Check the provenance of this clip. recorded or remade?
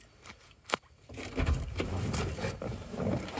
recorded